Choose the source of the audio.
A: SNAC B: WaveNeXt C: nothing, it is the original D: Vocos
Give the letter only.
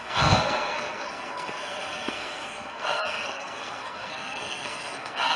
A